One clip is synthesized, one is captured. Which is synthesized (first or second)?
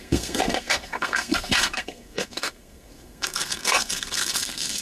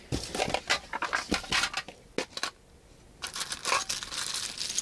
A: first